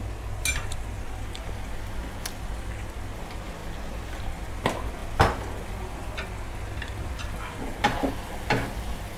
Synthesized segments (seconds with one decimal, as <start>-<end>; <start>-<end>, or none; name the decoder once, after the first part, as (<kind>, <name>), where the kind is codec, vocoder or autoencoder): none